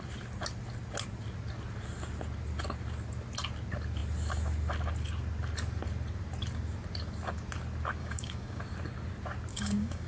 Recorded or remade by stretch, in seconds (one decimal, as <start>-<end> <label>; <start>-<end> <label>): 0.0-8.0 recorded; 8.0-8.6 remade; 8.6-9.5 recorded; 9.5-10.1 remade